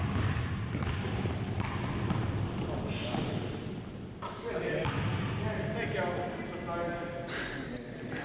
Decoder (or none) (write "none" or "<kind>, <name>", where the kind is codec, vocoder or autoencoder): none